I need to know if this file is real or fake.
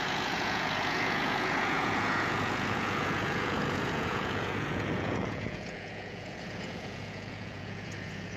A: fake